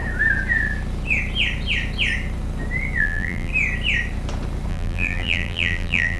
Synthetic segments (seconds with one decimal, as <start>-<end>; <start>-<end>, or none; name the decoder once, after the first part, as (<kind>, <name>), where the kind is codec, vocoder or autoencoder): 3.0-3.5 (vocoder, BigVGAN v2); 4.7-6.2